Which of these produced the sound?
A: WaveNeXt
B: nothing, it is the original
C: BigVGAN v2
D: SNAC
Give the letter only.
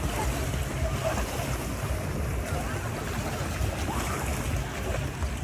B